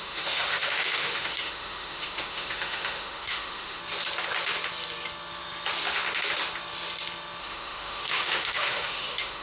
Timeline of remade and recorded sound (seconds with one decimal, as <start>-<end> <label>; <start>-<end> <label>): 0.0-3.8 remade; 3.8-7.4 recorded; 7.4-9.4 remade